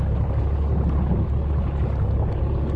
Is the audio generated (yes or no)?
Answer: no